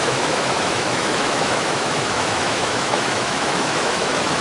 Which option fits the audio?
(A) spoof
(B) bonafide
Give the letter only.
A